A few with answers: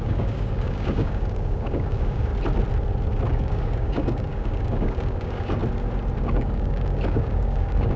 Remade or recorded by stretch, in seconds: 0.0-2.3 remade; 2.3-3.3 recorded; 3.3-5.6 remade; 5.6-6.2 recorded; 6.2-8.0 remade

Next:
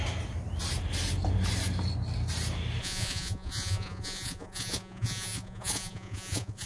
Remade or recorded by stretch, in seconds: 0.0-2.8 recorded; 2.8-6.7 remade

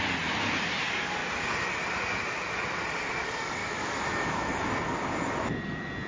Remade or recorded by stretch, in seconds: 0.0-3.6 recorded; 3.6-4.7 remade; 4.7-6.1 recorded

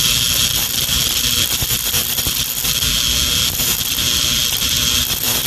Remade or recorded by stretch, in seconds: 0.0-5.5 recorded

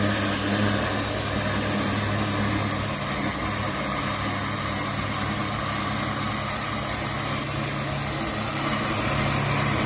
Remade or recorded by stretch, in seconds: 0.0-9.9 recorded